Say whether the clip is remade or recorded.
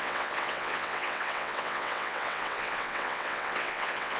remade